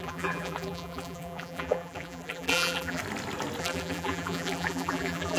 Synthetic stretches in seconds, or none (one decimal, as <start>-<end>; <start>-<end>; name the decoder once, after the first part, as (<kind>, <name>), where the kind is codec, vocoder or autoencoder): 0.0-3.0 (vocoder, BigVGAN v2); 3.6-5.4